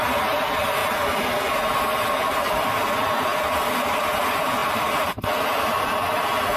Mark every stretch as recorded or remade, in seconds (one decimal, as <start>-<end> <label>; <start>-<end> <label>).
0.0-0.8 recorded; 0.8-2.9 remade; 2.9-4.6 recorded; 4.6-6.0 remade; 6.0-6.6 recorded